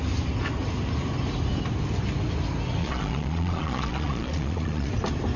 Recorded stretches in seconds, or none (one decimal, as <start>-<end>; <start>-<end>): 0.0-2.8; 4.9-5.4

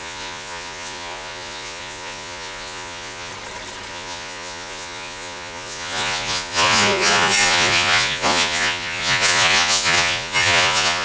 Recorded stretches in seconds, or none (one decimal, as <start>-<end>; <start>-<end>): 3.3-3.9

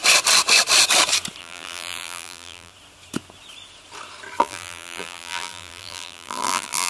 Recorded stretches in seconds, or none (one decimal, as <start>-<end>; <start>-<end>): 0.0-1.4; 2.7-4.4

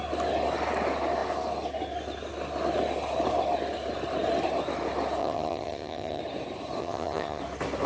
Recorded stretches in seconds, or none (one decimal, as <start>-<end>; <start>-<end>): 0.0-5.2; 6.2-6.8; 7.4-7.9

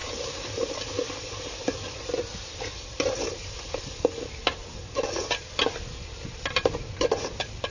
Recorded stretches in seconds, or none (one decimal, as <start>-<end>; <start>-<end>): none

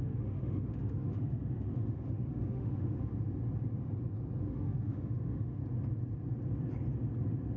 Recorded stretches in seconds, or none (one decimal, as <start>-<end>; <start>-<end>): 3.1-4.4; 5.6-7.6

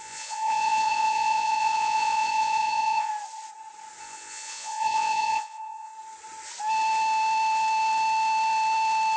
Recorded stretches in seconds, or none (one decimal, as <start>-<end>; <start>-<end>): 3.1-4.0; 5.9-9.2